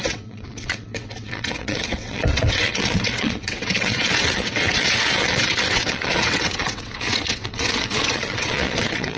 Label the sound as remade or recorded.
remade